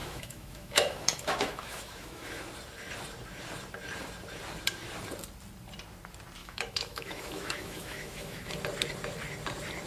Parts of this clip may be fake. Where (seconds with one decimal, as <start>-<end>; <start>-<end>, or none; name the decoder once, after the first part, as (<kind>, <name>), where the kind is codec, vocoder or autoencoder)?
0.0-2.4 (autoencoder, DAC-VAE); 6.4-8.5